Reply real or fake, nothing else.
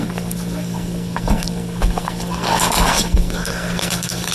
fake